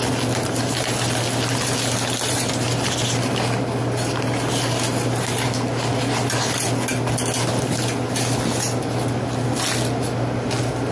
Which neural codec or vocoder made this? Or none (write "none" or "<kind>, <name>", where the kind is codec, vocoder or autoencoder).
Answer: none